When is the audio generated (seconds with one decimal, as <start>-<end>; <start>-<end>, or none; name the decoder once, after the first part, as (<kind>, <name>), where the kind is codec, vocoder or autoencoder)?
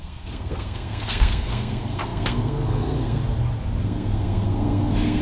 0.0-3.2 (codec, SNAC); 3.8-5.2